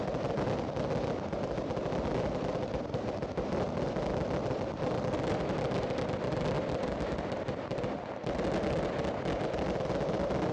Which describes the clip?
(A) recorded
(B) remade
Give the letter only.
A